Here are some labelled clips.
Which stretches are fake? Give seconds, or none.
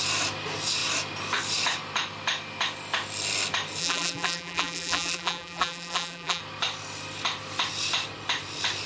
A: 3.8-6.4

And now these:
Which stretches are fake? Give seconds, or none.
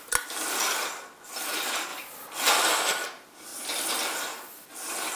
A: 1.9-2.5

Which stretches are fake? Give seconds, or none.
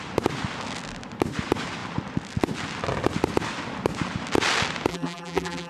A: 4.9-5.7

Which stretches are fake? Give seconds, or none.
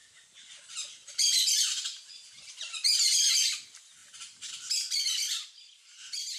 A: 4.0-4.5